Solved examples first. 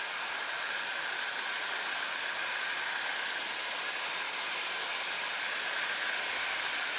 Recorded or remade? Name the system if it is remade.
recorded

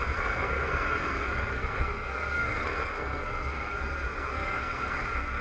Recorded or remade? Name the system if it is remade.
remade, codec, SNAC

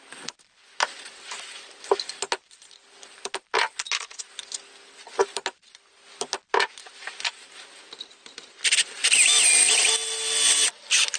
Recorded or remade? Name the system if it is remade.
recorded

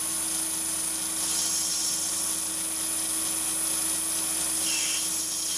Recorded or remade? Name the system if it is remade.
recorded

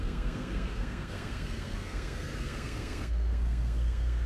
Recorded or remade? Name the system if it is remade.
remade, codec, SNAC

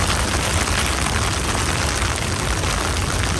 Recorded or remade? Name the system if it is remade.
recorded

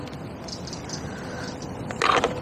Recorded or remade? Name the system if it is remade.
recorded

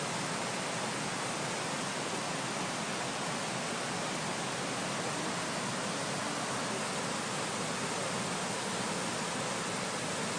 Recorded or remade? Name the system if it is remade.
recorded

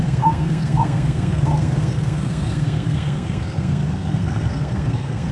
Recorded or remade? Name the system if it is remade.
remade, codec, SNAC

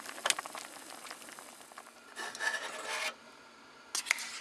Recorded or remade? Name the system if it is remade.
recorded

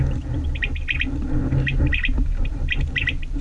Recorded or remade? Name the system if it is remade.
recorded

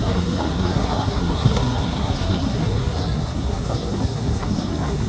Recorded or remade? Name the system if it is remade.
remade, codec, SNAC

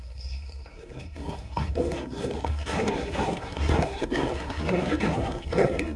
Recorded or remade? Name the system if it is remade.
remade, codec, SNAC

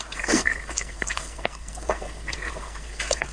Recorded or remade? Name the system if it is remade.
remade, codec, SNAC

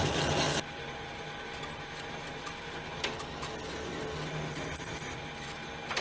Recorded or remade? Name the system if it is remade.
recorded